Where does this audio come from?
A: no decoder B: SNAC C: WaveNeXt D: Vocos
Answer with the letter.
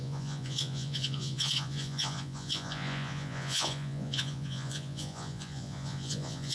D